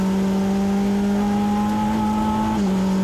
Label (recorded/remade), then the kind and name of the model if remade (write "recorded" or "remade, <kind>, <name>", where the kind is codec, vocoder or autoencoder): recorded